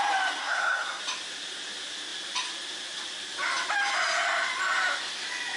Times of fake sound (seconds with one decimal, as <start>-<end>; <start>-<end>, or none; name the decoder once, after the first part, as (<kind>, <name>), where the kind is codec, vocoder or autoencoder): 0.4-1.0 (codec, SNAC)